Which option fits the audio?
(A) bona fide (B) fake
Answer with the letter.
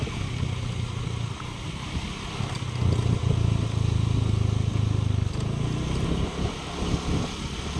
A